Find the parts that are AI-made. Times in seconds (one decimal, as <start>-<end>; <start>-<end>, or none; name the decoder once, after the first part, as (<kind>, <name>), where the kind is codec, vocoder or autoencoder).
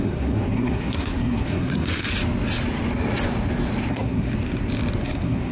0.0-2.0 (codec, SNAC); 3.9-4.3; 5.0-5.5